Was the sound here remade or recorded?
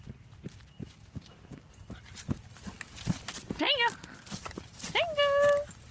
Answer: recorded